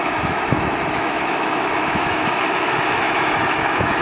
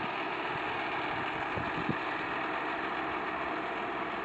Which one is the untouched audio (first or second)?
second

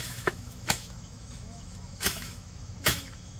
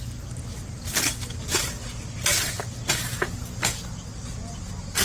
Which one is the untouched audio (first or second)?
second